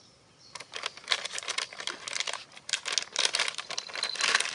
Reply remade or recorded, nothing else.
recorded